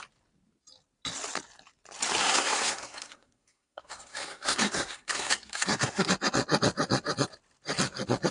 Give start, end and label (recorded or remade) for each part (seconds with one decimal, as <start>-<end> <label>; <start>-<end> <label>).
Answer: 0.0-2.2 recorded; 2.2-6.1 remade; 6.1-8.3 recorded